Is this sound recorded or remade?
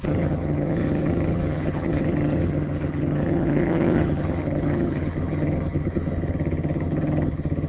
remade